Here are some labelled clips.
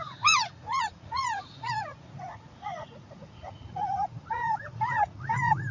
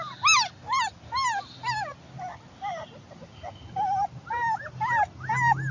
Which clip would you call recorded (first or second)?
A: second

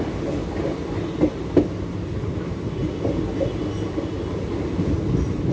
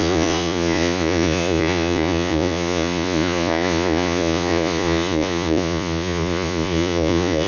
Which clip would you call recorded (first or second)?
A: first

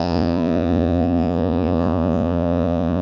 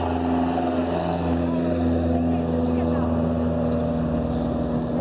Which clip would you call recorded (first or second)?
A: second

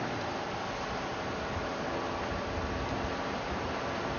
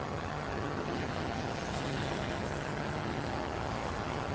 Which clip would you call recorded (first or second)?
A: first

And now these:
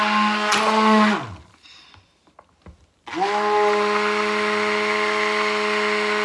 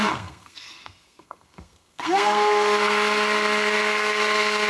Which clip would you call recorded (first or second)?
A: first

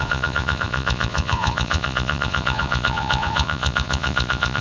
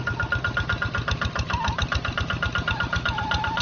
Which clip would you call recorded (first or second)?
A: second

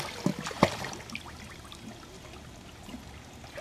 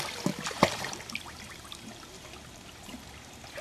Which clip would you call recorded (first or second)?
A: first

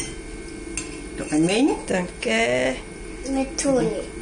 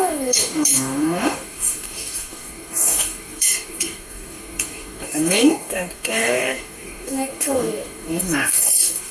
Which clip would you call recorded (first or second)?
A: first